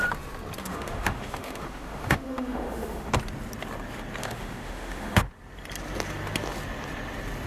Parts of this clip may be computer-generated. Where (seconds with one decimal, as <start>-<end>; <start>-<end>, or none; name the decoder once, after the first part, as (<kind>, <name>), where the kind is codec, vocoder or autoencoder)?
0.6-3.1 (autoencoder, DAC-VAE); 4.2-5.3